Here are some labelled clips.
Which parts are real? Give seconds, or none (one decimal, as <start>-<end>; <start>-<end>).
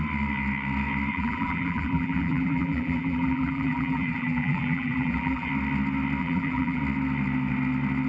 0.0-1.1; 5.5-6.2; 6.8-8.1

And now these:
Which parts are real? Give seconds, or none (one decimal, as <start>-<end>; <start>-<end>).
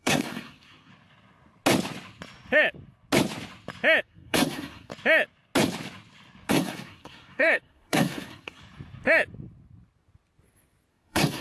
0.9-4.0; 4.9-6.5; 8.6-10.9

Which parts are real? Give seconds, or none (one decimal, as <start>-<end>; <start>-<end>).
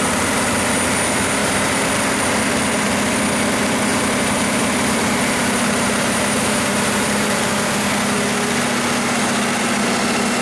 0.0-1.4; 1.9-3.9; 7.5-10.4